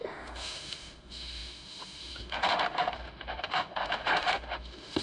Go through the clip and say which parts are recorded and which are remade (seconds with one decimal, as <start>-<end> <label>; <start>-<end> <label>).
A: 0.0-5.0 remade